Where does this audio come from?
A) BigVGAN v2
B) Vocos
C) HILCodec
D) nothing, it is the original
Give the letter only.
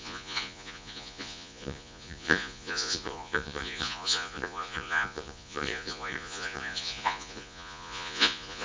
B